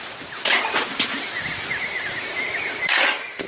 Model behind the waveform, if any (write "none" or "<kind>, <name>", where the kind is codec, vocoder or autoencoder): none